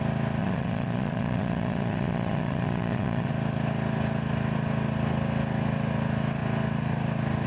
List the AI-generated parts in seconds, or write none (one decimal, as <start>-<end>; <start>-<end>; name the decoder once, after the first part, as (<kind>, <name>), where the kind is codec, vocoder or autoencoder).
0.4-3.3 (vocoder, Vocos)